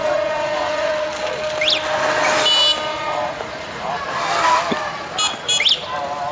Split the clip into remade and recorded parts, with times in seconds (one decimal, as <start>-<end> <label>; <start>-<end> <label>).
0.0-0.9 remade; 0.9-2.9 recorded; 2.9-4.0 remade; 4.0-6.3 recorded